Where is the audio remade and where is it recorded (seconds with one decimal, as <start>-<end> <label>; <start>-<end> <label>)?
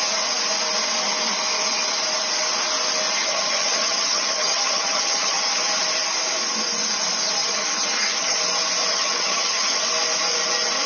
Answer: 0.0-3.2 recorded; 3.2-5.6 remade; 5.6-7.4 recorded; 7.4-8.4 remade; 8.4-8.9 recorded; 8.9-9.8 remade; 9.8-10.9 recorded